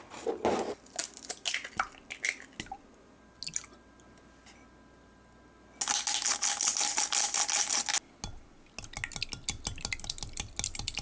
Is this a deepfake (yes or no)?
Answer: no